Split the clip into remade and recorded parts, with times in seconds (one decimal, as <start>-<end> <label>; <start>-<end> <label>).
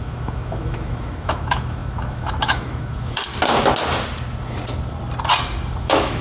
0.0-3.3 remade; 3.3-5.8 recorded; 5.8-6.2 remade